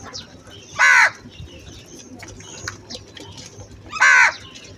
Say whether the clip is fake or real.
real